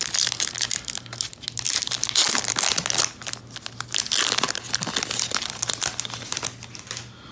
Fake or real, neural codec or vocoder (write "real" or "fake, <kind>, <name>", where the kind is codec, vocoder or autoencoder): real